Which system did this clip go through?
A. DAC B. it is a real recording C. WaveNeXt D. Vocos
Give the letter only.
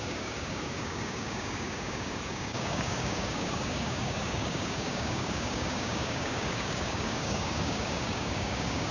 A